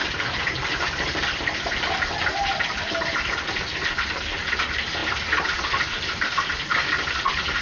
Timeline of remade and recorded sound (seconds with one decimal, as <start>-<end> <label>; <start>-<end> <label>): 0.0-7.6 recorded